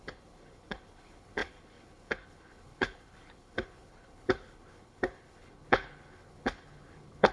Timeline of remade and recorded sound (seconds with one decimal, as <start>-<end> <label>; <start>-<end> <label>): 0.0-7.3 remade